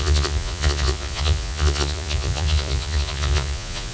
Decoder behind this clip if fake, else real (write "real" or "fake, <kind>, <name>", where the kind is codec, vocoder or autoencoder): fake, vocoder, Vocos